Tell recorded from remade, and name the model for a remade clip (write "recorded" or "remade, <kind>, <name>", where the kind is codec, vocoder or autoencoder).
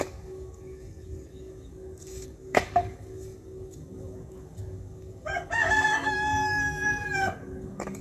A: remade, codec, DAC